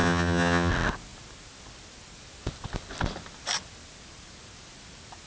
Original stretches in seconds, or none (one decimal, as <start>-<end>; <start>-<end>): 0.7-5.3